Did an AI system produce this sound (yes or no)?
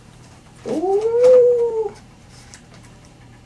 yes